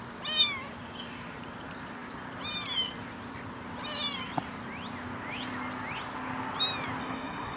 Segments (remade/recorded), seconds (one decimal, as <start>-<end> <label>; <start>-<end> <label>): 0.0-7.0 recorded; 7.0-7.6 remade